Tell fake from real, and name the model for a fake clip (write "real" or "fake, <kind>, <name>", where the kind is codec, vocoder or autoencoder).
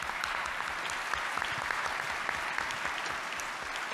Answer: real